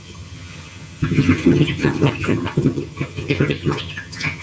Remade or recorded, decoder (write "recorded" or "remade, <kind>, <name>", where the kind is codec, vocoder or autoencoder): remade, vocoder, HiFi-GAN